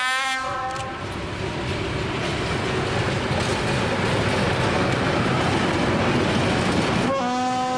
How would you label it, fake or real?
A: real